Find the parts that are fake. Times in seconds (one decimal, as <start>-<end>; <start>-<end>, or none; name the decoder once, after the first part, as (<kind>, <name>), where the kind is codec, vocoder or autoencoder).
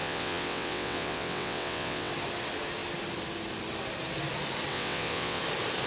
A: 0.0-2.1 (vocoder, WaveNeXt); 4.7-5.4